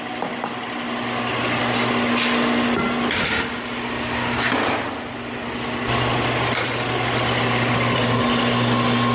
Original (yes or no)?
yes